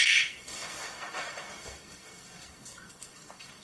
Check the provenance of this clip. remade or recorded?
remade